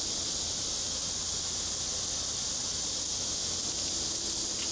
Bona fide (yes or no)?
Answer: yes